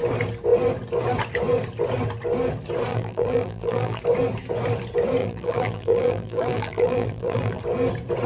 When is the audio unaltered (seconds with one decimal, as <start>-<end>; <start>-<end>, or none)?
0.0-2.9; 4.0-5.2; 7.6-8.3